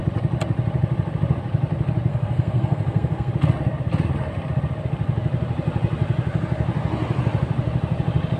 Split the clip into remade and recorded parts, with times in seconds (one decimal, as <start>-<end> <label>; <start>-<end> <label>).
0.0-2.1 recorded; 2.1-3.3 remade; 3.3-8.4 recorded